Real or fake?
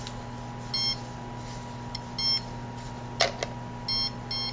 real